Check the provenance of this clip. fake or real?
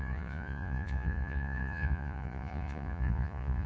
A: fake